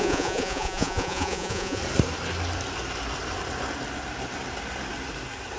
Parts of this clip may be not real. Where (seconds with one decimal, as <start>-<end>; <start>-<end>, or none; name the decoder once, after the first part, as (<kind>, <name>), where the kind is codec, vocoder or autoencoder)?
0.0-1.8 (vocoder, Vocos)